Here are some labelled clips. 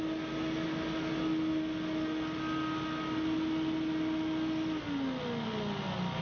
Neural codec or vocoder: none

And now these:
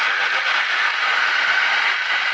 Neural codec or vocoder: none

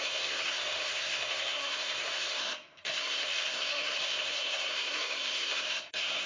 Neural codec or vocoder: codec, SNAC